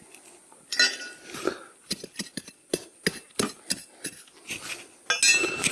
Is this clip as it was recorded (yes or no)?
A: yes